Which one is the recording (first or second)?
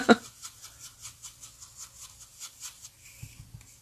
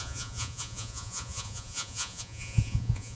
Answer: first